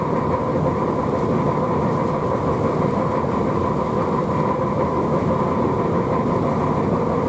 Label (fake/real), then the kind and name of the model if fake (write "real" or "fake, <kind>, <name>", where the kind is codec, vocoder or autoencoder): real